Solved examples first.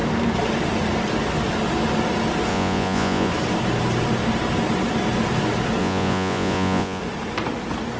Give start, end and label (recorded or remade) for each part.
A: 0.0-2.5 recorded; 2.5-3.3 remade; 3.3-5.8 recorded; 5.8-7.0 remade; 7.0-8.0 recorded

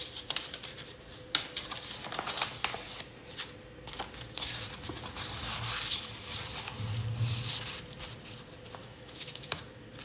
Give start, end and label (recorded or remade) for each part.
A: 0.0-8.8 recorded; 8.8-9.6 remade; 9.6-10.0 recorded

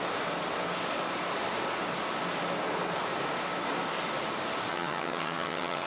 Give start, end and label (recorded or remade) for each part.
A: 0.0-4.7 recorded; 4.7-5.9 remade

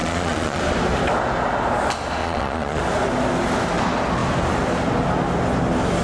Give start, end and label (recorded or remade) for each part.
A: 0.0-0.6 remade; 0.6-2.2 recorded; 2.2-2.8 remade; 2.8-6.0 recorded

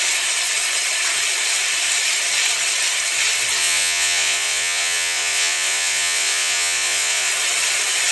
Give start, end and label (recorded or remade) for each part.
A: 0.0-3.6 recorded; 3.6-7.3 remade; 7.3-8.1 recorded

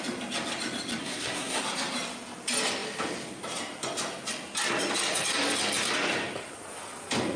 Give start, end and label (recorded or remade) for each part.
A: 0.0-1.0 recorded; 1.0-1.6 remade; 1.6-7.4 recorded

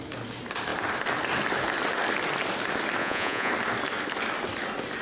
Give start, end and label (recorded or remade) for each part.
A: 0.0-3.0 recorded; 3.0-3.5 remade; 3.5-5.0 recorded